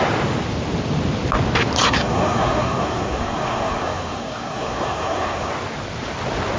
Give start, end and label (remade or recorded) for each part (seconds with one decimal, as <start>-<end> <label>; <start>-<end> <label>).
0.0-1.8 recorded; 1.8-5.5 remade; 5.5-6.6 recorded